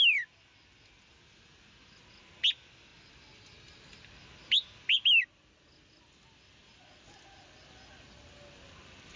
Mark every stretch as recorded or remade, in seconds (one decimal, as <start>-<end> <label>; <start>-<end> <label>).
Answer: 0.0-9.2 recorded